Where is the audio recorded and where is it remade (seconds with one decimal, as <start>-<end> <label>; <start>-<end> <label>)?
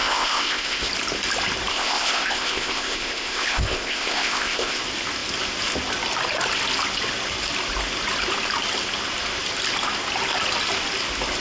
0.0-0.9 remade; 0.9-1.7 recorded; 1.7-4.8 remade; 4.8-11.4 recorded